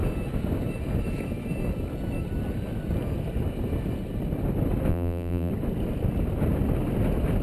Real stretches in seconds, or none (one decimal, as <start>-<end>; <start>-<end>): 0.0-4.9; 5.5-7.4